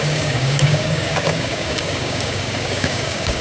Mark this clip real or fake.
fake